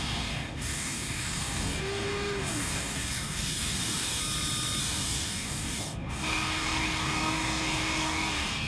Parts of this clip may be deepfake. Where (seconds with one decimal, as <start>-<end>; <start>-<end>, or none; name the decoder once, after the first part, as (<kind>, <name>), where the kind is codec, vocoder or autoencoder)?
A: 0.0-4.2 (codec, DAC); 4.8-8.7